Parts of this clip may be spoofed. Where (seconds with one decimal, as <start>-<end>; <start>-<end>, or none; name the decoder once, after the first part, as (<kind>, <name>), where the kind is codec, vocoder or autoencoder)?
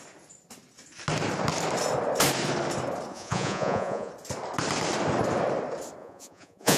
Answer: 3.1-4.1 (vocoder, Vocos); 6.0-6.8